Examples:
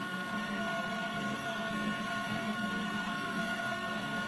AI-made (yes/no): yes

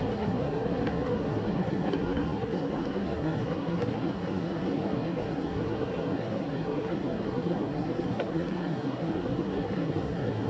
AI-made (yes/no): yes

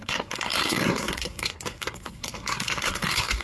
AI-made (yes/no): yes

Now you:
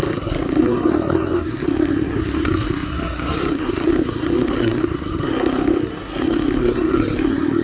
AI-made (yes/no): yes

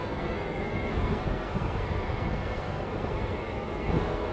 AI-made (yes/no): yes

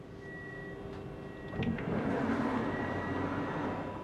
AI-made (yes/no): no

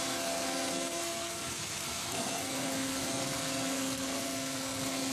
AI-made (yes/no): yes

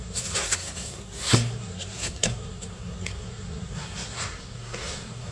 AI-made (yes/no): yes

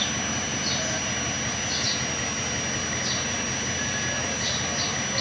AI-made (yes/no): no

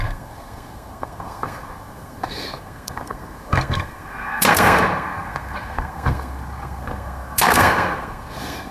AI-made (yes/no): yes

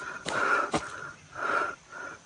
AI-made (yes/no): no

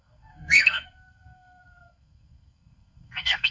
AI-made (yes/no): yes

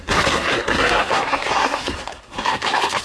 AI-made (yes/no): yes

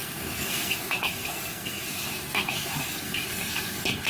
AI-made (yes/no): yes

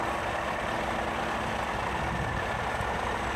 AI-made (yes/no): no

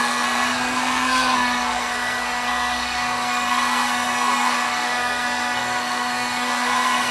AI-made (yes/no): yes